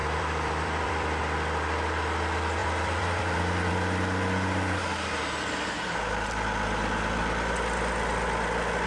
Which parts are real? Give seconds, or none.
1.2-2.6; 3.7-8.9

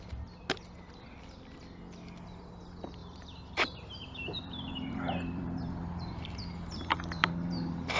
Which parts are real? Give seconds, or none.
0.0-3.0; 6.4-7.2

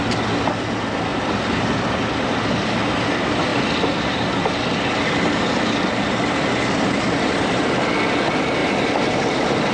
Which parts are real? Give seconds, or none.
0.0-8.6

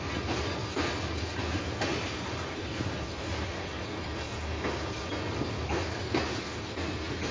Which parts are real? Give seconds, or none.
0.0-7.3

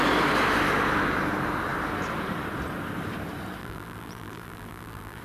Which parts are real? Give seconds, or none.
0.0-3.6